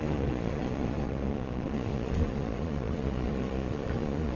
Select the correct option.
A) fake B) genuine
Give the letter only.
A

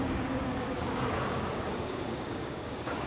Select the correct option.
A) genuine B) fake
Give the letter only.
B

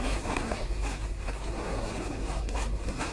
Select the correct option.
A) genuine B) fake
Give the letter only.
B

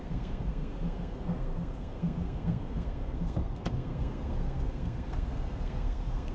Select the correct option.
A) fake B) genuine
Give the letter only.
A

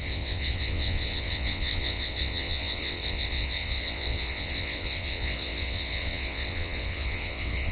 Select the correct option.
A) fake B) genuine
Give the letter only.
A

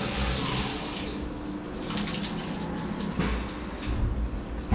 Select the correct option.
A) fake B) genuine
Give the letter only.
B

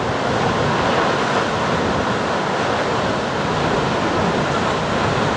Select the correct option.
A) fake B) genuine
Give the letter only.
B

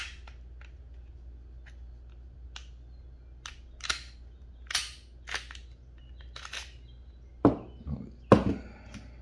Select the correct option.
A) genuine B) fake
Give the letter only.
A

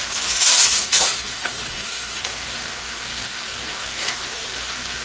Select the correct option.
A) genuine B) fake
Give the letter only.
B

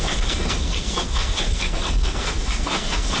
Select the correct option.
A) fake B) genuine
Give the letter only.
A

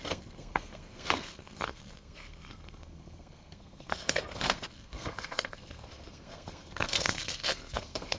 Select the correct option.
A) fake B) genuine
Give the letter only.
A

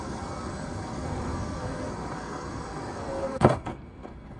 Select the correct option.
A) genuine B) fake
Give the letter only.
B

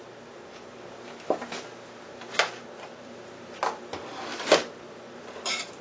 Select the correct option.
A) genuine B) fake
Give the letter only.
A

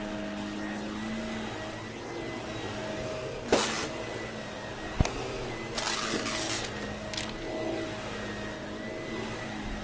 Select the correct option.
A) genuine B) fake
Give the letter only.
A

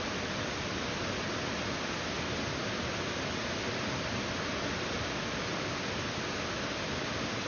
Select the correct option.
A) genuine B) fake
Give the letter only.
A